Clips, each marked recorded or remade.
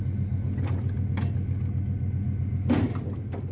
recorded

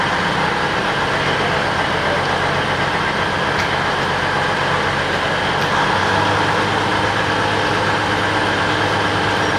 recorded